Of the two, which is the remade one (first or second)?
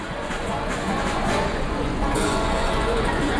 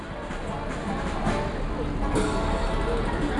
first